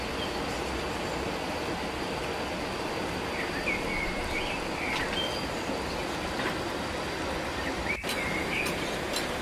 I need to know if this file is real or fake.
real